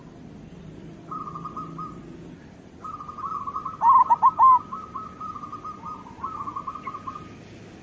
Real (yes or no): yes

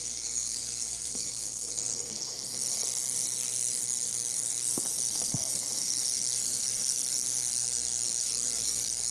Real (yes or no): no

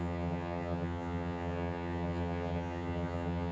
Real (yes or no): no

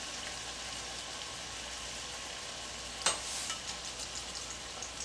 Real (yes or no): yes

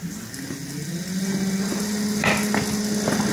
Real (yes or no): yes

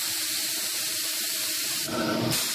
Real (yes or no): no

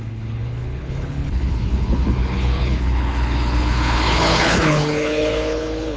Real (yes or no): no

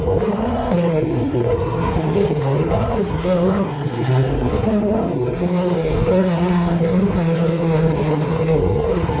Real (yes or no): no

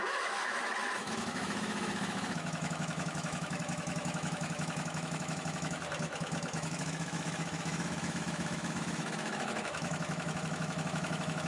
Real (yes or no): no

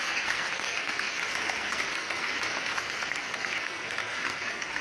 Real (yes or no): no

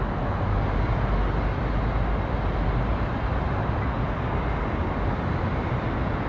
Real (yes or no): yes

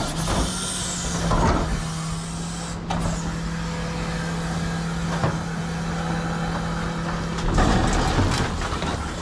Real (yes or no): yes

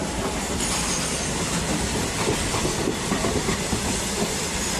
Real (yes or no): yes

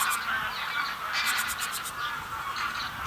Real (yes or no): yes